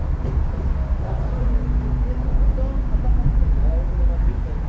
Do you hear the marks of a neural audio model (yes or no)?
no